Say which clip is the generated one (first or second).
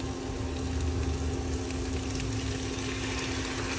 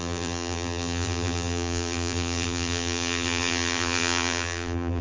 second